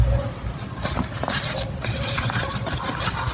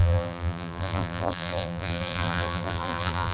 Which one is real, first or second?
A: first